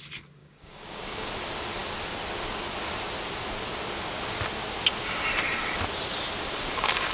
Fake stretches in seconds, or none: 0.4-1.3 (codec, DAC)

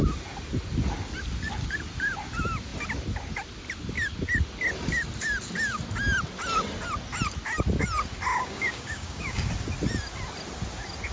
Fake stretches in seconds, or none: 8.3-9.5 (codec, DAC)

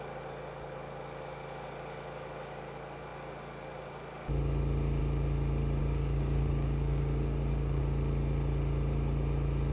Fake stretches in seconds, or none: 5.8-7.8 (codec, DAC)

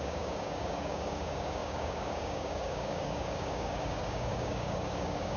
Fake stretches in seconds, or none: 0.0-5.4 (codec, DAC)

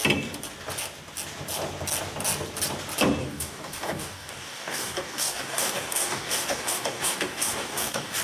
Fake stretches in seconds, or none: 3.2-8.2 (codec, DAC)

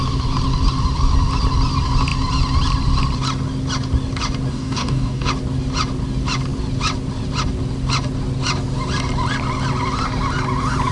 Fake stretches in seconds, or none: 4.5-5.3 (codec, DAC)